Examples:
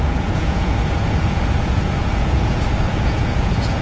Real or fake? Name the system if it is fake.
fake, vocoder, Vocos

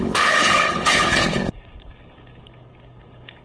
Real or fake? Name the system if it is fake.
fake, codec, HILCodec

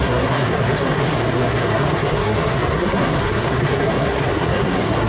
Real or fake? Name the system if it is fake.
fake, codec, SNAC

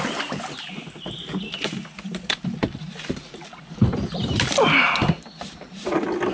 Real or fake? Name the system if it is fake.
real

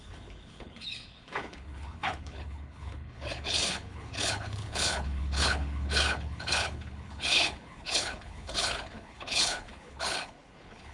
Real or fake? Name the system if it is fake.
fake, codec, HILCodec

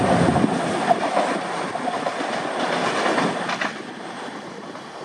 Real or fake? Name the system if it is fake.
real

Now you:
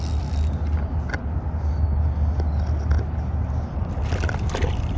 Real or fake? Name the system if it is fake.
real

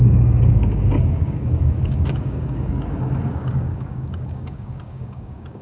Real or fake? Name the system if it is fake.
fake, codec, DAC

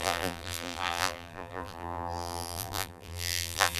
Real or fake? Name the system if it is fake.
fake, vocoder, BigVGAN v2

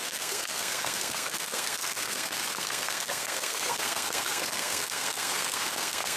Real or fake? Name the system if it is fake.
fake, codec, SNAC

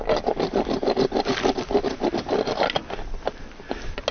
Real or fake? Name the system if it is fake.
real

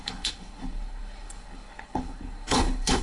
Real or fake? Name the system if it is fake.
fake, codec, HILCodec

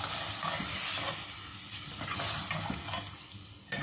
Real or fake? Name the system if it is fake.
real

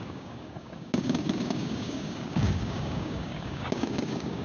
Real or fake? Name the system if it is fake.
fake, codec, DAC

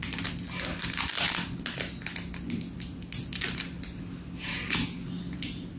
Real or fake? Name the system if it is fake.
real